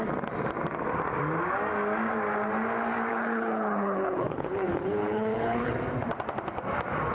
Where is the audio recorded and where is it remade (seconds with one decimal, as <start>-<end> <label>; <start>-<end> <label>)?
0.0-3.1 recorded; 3.1-5.7 remade; 5.7-7.1 recorded